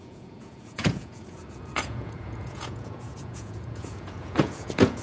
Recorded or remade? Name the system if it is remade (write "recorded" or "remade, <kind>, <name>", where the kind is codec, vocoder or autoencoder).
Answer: remade, vocoder, Vocos